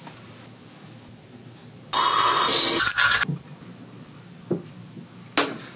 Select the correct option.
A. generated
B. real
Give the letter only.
B